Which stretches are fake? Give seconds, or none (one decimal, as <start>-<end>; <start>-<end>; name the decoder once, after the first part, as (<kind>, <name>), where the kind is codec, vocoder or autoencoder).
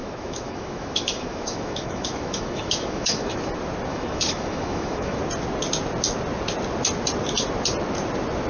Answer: 0.0-3.5 (autoencoder, DAC-VAE); 3.9-5.2